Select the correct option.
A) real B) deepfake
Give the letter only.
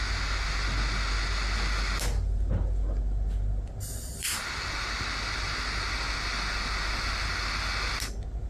A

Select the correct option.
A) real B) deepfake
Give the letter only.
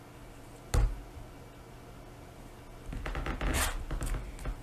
A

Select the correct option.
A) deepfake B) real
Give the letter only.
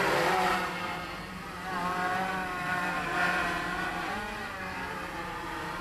A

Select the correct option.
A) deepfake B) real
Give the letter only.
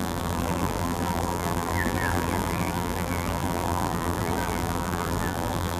A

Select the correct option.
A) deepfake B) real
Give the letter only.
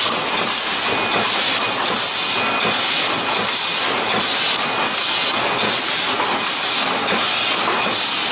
B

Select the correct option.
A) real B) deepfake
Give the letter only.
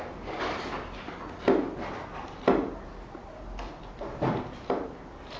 A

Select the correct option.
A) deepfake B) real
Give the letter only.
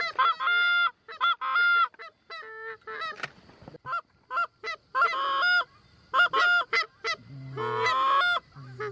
B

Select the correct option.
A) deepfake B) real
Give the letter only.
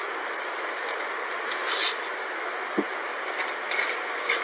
B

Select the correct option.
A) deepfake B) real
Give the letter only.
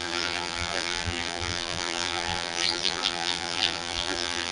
A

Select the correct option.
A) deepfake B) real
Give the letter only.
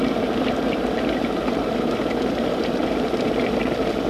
A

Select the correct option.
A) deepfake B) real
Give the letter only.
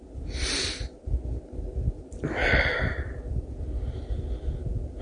B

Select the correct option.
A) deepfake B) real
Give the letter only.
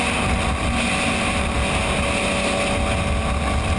B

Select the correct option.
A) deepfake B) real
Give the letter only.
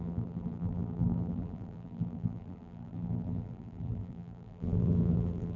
A